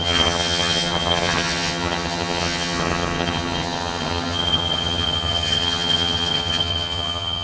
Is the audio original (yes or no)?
no